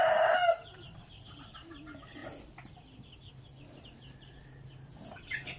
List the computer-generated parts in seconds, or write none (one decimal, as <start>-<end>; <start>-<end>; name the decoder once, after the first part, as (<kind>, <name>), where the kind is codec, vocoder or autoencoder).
none